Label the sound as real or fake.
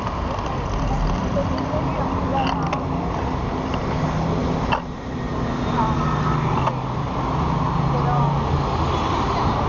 real